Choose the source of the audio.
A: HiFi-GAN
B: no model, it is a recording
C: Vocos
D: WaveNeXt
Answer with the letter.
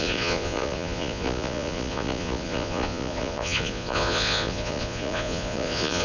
C